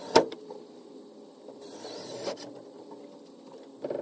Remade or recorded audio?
recorded